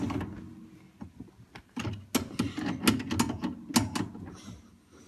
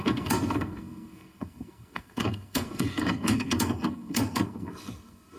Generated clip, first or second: second